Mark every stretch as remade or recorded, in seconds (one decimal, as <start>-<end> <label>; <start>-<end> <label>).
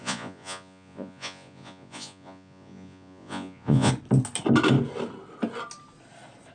0.0-3.9 remade; 3.9-6.5 recorded